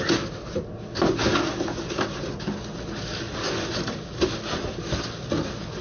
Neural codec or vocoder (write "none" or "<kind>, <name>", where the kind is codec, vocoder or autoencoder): none